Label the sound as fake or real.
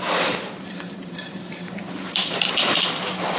fake